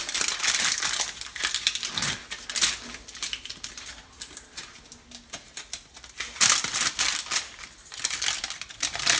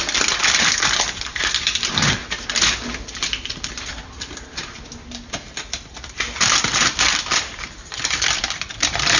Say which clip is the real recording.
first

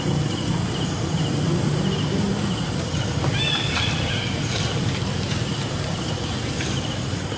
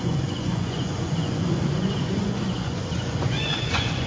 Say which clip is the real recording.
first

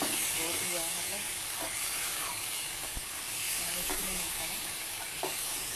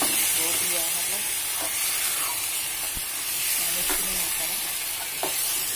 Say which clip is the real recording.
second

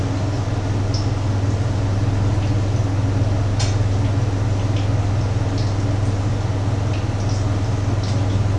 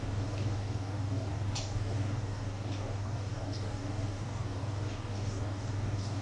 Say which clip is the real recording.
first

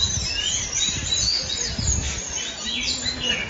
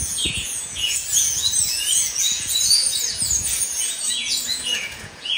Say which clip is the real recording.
first